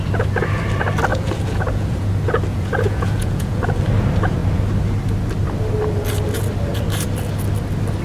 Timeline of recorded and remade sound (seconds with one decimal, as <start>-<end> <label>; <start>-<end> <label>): 0.0-1.1 recorded; 1.1-2.1 remade; 2.1-2.5 recorded; 2.5-3.6 remade; 3.6-8.0 recorded